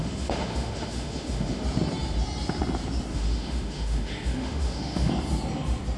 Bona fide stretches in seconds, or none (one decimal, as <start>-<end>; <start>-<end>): 1.6-3.1; 5.1-6.0